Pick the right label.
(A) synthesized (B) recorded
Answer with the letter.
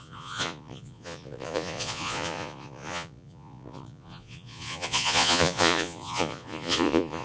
A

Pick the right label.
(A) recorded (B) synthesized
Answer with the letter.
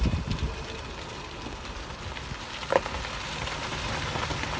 A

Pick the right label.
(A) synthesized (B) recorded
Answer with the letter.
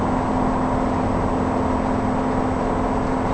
B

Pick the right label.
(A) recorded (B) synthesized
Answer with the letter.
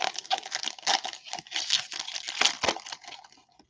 A